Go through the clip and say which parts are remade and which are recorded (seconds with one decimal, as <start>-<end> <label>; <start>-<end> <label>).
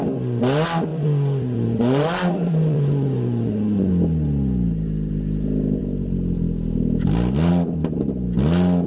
0.0-0.9 recorded; 0.9-3.9 remade; 3.9-8.9 recorded